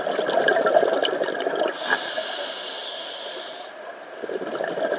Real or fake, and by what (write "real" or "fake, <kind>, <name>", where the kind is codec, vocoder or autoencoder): real